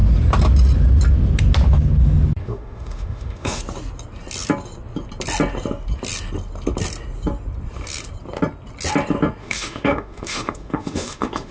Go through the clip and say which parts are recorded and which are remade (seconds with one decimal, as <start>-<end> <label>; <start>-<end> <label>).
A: 0.0-2.4 recorded; 2.4-3.6 remade; 3.6-9.4 recorded; 9.4-11.5 remade